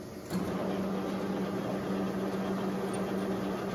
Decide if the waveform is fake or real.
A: real